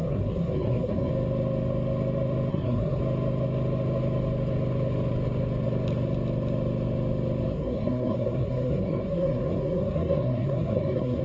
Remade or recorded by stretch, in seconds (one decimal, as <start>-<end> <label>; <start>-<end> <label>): 0.0-1.1 remade; 1.1-2.5 recorded; 2.5-3.0 remade; 3.0-7.5 recorded; 7.5-11.2 remade